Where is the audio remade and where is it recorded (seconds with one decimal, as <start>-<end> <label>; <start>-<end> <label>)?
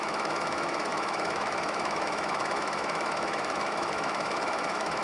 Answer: 0.0-5.0 remade